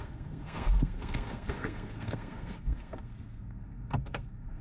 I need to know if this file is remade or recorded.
remade